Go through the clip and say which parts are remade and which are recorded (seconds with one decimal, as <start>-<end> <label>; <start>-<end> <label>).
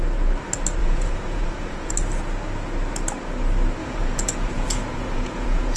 0.0-0.8 recorded; 0.8-1.9 remade; 1.9-3.8 recorded; 3.8-5.8 remade